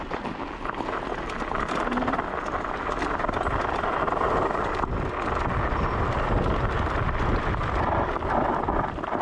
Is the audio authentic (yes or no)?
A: yes